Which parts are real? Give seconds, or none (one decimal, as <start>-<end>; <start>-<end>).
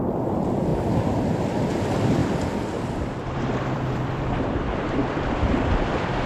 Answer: none